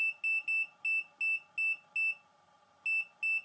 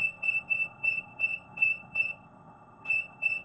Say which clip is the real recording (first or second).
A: first